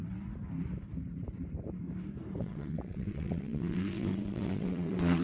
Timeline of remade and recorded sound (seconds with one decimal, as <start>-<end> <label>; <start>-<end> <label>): 0.0-2.4 recorded; 2.4-5.2 remade

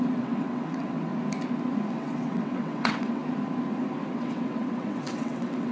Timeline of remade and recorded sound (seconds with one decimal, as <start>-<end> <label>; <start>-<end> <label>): 0.0-1.1 remade; 1.1-1.9 recorded; 1.9-3.2 remade; 3.2-4.1 recorded; 4.1-5.7 remade

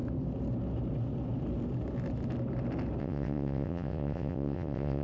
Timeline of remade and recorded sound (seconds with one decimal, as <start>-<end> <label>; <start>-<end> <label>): 0.0-3.0 recorded; 3.0-5.0 remade